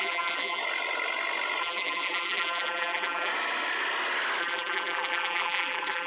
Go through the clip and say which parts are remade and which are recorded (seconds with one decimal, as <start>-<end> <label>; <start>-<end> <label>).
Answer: 0.0-0.6 remade; 0.6-1.6 recorded; 1.6-3.3 remade; 3.3-4.4 recorded; 4.4-6.1 remade